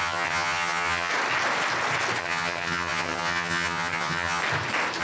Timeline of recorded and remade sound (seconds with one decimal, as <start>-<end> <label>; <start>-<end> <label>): 0.0-1.1 remade; 1.1-2.2 recorded; 2.2-4.4 remade; 4.4-5.0 recorded